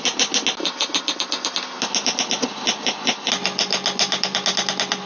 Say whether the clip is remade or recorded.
recorded